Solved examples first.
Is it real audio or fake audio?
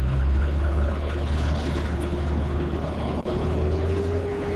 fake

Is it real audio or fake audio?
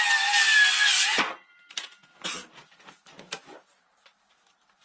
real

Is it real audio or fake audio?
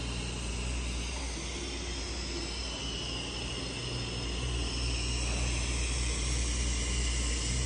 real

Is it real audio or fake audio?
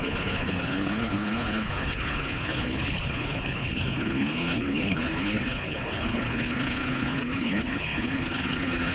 fake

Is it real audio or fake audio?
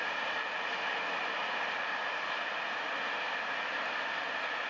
real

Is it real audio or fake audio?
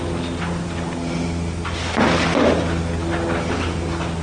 real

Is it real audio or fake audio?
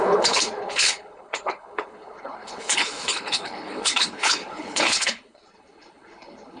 fake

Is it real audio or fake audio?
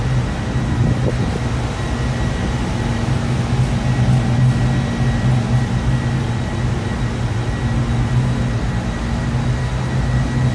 real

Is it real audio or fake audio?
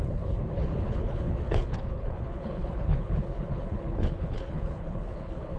fake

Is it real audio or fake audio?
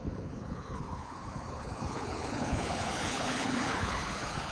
fake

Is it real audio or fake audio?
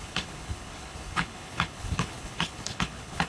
fake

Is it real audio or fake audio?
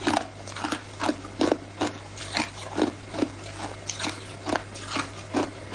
real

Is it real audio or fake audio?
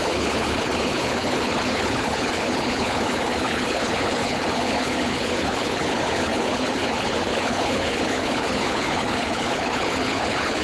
fake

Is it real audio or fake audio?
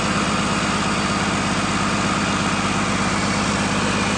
real